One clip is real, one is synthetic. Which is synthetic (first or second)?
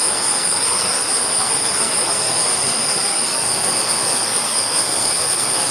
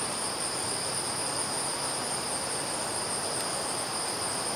first